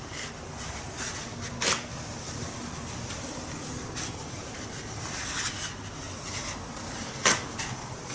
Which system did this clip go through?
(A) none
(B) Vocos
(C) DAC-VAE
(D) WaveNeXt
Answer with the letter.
A